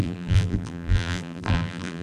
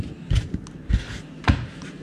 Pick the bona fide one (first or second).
second